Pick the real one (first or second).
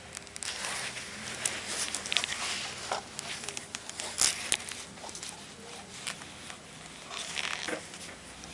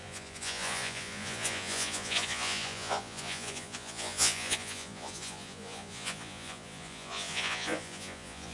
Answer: first